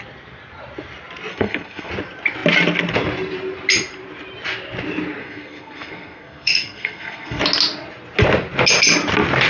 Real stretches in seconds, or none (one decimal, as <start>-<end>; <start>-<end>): 0.0-1.3; 1.9-5.2; 7.4-9.5

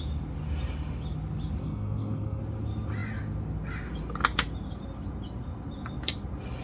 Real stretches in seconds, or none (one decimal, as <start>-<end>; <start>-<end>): 0.0-1.6; 2.4-6.6

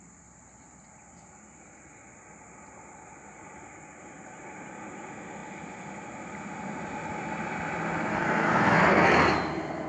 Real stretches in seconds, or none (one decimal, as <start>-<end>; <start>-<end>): 0.0-8.1; 9.1-9.9